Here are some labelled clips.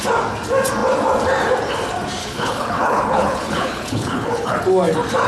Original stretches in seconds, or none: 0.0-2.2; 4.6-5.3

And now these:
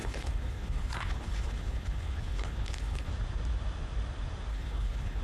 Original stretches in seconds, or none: 3.1-4.5

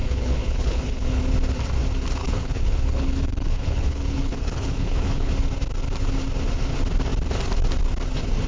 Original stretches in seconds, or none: 1.2-2.2; 5.3-8.5

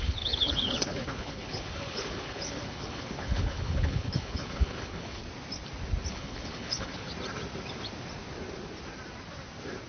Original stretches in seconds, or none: 5.2-6.1; 7.1-9.9

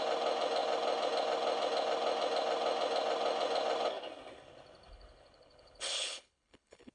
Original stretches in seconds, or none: 0.0-4.9

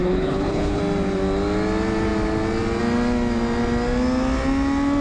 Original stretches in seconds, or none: 0.8-5.0